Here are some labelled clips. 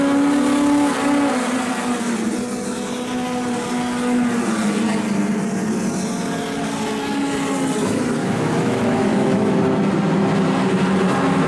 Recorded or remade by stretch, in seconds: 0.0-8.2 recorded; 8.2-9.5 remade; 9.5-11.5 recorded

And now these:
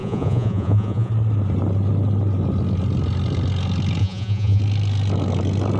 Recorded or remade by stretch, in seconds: 0.0-1.1 remade; 1.1-4.0 recorded; 4.0-4.6 remade; 4.6-5.8 recorded

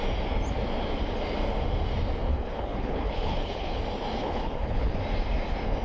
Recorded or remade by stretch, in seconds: 0.0-2.3 recorded; 2.3-3.8 remade; 3.8-4.2 recorded; 4.2-5.0 remade; 5.0-5.8 recorded

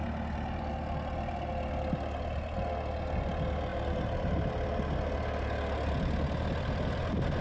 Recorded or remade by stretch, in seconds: 0.0-0.7 remade; 0.7-3.7 recorded; 3.7-4.5 remade; 4.5-7.4 recorded